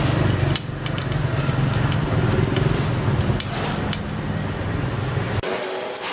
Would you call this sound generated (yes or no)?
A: no